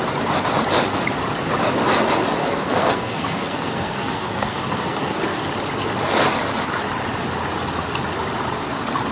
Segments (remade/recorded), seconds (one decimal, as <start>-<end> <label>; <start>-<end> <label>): 0.0-2.4 recorded; 2.4-5.2 remade; 5.2-9.1 recorded